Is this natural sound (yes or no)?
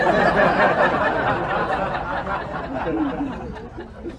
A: yes